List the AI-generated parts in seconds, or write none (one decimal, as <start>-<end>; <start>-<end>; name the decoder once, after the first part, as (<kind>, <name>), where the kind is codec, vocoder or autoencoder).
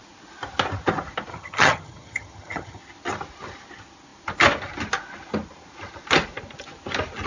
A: 1.3-2.8 (vocoder, HiFi-GAN)